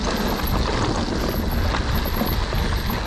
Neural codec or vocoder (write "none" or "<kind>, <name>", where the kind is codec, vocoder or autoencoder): none